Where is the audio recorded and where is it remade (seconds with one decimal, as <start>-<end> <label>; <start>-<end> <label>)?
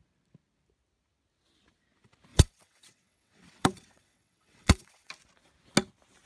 0.0-2.3 recorded; 2.3-5.1 remade; 5.1-6.3 recorded